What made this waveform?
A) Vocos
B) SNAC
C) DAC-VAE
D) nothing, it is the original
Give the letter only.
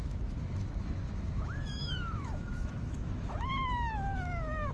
C